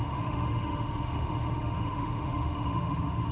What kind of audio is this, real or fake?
fake